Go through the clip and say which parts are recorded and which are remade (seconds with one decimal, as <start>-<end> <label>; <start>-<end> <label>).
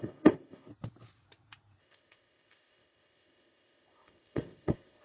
0.0-0.7 remade; 0.7-1.8 recorded; 1.8-5.0 remade